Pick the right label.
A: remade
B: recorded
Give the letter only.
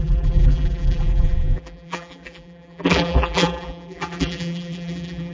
A